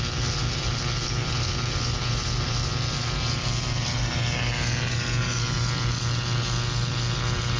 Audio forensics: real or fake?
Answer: real